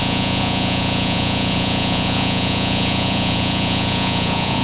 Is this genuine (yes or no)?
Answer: no